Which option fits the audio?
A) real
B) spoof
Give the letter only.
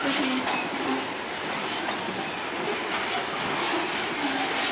A